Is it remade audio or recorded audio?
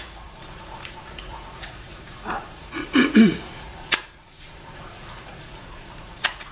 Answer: remade